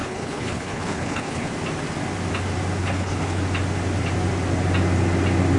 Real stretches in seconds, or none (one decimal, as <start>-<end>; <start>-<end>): 1.5-2.8; 3.4-5.6